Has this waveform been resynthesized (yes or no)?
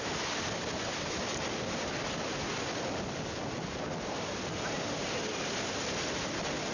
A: no